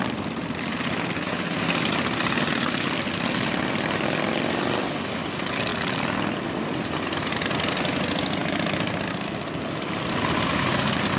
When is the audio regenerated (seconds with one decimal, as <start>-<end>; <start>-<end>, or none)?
none